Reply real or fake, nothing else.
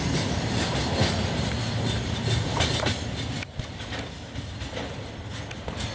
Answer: real